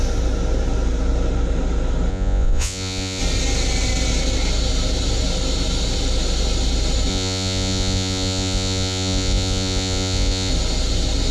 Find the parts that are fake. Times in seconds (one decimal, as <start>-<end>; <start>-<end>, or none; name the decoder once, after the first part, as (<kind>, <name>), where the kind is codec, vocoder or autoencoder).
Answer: 2.1-3.2 (vocoder, Vocos); 7.1-10.5